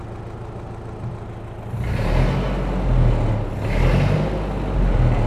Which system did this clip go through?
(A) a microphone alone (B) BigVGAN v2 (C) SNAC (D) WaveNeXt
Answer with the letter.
A